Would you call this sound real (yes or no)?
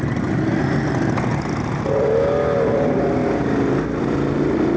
yes